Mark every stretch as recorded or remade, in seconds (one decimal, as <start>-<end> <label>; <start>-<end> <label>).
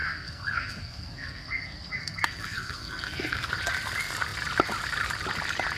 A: 0.0-3.5 remade; 3.5-5.8 recorded